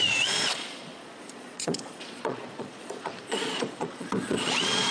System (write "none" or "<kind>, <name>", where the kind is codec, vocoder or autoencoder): vocoder, Vocos